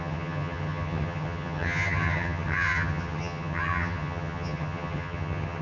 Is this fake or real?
fake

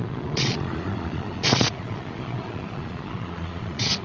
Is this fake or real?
fake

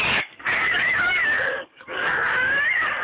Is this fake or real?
fake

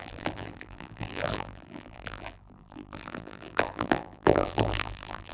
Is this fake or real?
fake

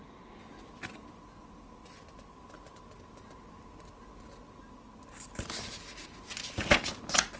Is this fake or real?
real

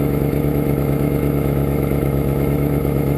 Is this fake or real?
fake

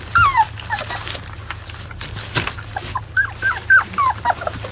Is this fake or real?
real